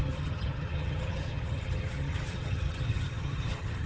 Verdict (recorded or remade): remade